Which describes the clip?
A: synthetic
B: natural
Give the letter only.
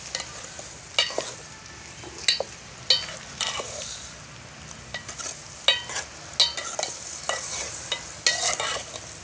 B